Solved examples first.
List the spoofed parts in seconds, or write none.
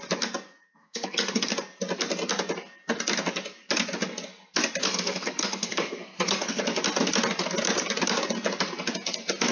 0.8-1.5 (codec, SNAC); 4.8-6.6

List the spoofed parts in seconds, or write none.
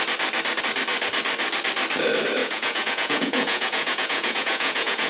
2.4-5.1 (vocoder, Vocos)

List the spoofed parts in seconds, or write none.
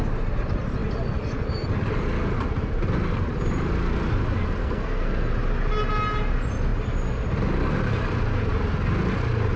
4.6-5.3 (codec, SNAC)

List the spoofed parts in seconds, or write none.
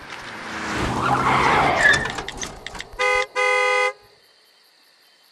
none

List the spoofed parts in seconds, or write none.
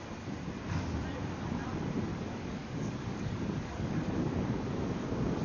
2.1-5.4 (codec, DAC)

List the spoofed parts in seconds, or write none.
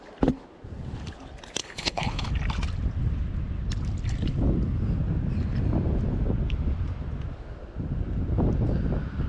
1.6-2.3 (codec, HILCodec)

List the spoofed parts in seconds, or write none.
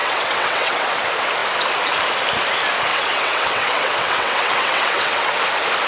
0.0-0.9 (vocoder, WaveNeXt); 2.9-5.4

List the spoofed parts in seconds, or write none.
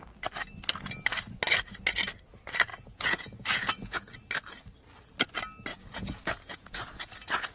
2.7-4.1 (vocoder, Vocos); 5.7-7.5